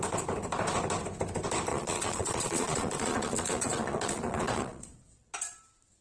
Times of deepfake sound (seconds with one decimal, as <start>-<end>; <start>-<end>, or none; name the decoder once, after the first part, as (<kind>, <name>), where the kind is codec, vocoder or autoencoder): 1.7-5.3 (vocoder, Vocos)